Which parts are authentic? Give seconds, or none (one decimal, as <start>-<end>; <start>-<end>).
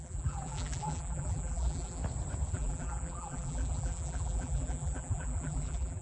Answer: 2.0-2.5